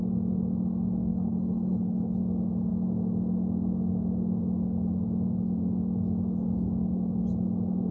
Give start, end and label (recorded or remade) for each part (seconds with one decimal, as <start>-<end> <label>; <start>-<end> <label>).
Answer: 0.0-1.1 recorded; 1.1-2.2 remade; 2.2-7.9 recorded